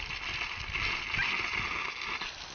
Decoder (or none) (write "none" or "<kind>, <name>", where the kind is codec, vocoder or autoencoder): none